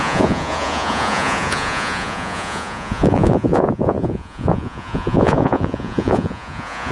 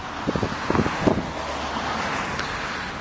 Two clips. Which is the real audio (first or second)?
second